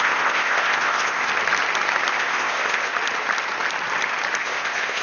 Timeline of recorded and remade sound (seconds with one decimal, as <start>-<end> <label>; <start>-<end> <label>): 0.0-1.3 remade; 1.3-2.1 recorded; 2.1-2.9 remade; 2.9-4.4 recorded; 4.4-5.0 remade